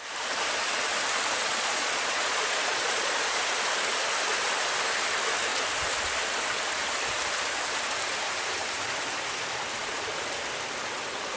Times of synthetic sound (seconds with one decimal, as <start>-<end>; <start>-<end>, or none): 1.4-3.2